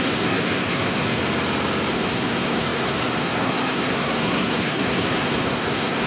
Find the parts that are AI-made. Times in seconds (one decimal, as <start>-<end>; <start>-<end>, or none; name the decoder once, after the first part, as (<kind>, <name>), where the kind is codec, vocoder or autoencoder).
0.0-1.2 (codec, SNAC); 1.9-6.1